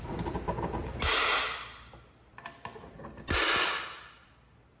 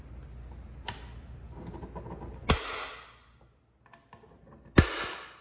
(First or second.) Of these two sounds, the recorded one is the second